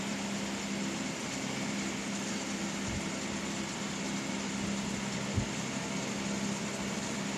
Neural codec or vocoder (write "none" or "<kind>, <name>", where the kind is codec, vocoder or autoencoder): none